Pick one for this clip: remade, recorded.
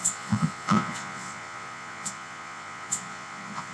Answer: remade